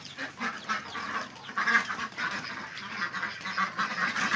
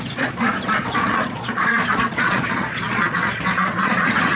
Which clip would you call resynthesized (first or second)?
second